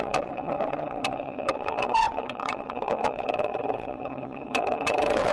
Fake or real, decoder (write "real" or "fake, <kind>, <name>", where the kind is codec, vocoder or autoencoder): fake, vocoder, WaveNeXt